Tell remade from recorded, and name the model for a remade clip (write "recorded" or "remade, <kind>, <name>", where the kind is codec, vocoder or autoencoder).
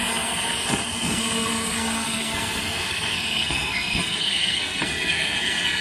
remade, codec, SNAC